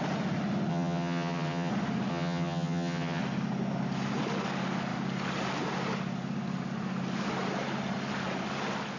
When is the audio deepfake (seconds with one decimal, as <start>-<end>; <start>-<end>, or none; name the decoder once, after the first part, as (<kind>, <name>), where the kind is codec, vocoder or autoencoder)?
0.7-1.7 (vocoder, HiFi-GAN); 2.1-3.2